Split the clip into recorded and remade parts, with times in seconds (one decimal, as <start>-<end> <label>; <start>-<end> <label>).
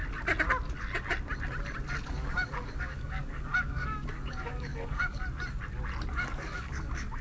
0.0-2.1 recorded; 2.1-5.2 remade; 5.2-6.1 recorded; 6.1-7.2 remade